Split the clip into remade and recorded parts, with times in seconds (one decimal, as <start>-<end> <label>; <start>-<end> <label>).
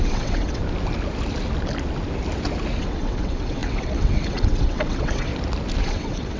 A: 0.0-0.6 remade; 0.6-2.8 recorded; 2.8-5.3 remade; 5.3-5.8 recorded; 5.8-6.4 remade